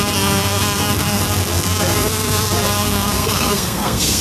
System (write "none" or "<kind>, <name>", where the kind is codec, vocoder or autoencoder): codec, SNAC